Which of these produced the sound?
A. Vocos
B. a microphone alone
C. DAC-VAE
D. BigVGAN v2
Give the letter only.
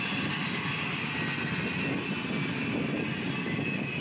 B